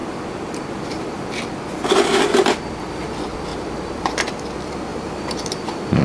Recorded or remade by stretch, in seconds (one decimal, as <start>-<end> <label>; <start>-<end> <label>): 0.0-1.3 remade; 1.3-3.5 recorded; 3.5-4.1 remade; 4.1-4.9 recorded; 4.9-6.0 remade